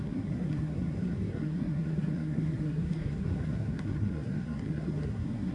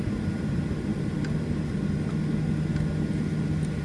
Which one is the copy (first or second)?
first